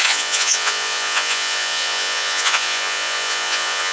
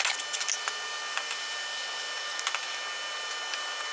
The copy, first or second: first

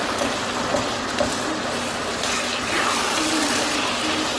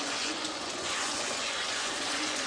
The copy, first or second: second